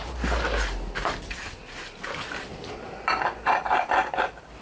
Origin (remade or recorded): recorded